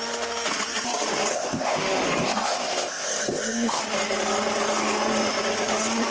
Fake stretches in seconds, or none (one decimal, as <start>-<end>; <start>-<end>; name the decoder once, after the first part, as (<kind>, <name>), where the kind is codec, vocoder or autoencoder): 1.3-1.8 (codec, ZipCodec); 2.2-3.8